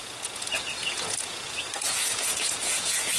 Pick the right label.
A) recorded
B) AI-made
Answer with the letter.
B